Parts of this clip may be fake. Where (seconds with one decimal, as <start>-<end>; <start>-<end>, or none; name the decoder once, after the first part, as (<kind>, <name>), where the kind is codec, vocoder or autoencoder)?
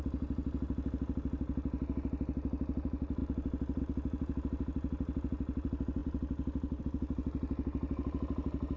none